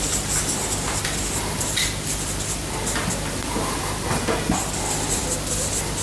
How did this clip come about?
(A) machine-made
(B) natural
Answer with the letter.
B